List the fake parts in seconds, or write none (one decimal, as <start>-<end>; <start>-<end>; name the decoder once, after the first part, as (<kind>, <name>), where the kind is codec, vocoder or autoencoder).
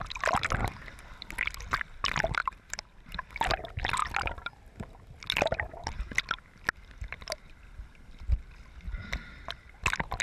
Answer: 0.6-1.4 (vocoder, BigVGAN v2); 2.4-3.3